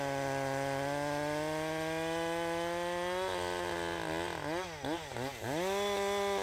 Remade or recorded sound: recorded